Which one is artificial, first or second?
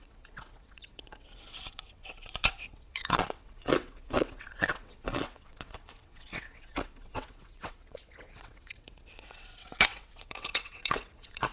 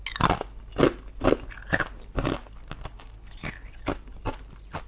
first